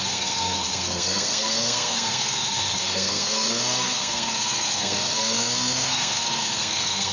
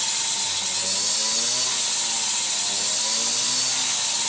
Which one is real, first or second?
second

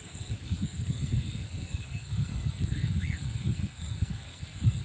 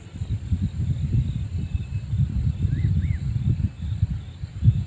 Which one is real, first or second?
second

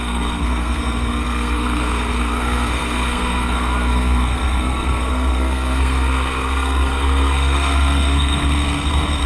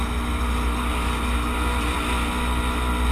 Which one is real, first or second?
second